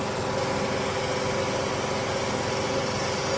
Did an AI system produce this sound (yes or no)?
no